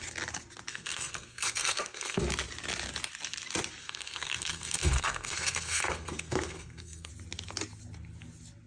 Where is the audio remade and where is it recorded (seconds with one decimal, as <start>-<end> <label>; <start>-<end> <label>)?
0.0-0.7 recorded; 0.7-2.2 remade; 2.2-3.8 recorded; 3.8-7.1 remade; 7.1-8.7 recorded